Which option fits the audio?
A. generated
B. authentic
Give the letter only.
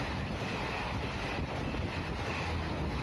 B